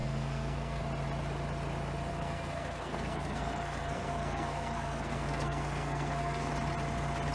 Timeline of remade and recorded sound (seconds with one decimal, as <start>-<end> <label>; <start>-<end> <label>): 0.0-0.8 remade; 0.8-2.1 recorded; 2.1-6.5 remade; 6.5-7.3 recorded